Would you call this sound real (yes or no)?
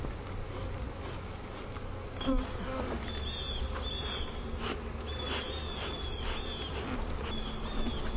yes